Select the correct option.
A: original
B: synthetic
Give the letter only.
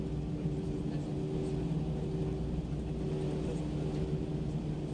A